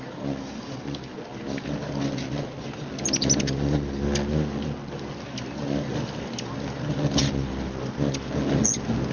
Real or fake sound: real